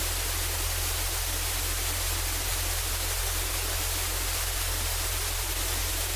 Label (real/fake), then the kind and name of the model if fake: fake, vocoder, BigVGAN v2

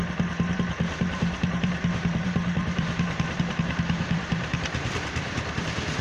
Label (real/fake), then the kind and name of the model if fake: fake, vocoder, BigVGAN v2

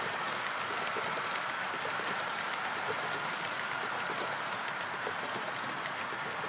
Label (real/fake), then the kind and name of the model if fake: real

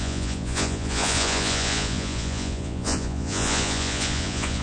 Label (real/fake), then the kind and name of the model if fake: fake, vocoder, Vocos